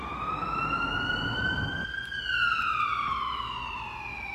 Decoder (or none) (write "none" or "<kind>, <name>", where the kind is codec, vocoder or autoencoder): none